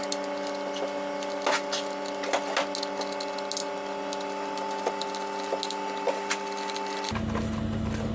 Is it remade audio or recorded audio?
recorded